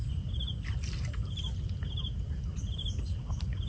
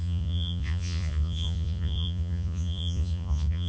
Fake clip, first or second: second